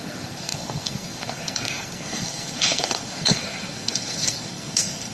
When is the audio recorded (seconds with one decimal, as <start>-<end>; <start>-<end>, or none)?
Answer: none